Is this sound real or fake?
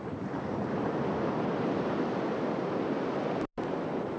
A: real